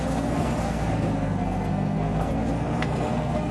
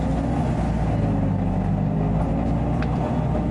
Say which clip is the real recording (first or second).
second